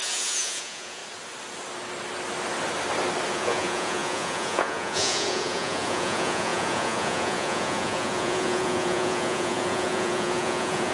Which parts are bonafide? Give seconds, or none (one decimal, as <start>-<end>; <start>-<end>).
1.0-3.3

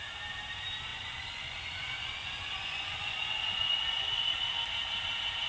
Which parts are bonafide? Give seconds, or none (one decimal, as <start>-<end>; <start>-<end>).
0.0-0.9; 4.2-5.5